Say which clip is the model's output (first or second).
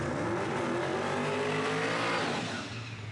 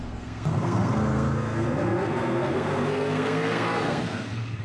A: second